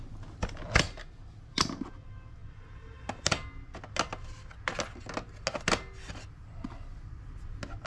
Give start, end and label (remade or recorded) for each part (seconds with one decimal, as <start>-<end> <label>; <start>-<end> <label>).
0.0-7.9 recorded